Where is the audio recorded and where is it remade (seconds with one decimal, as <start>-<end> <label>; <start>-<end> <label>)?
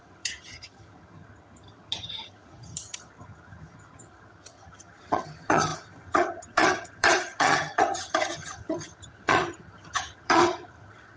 0.0-11.2 remade